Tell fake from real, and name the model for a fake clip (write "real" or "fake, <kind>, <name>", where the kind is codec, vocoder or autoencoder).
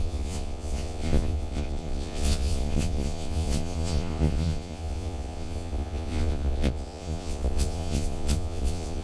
fake, vocoder, Vocos